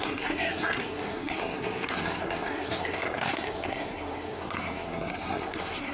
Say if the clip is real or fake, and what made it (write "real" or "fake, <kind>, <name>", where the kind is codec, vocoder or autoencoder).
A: fake, codec, SNAC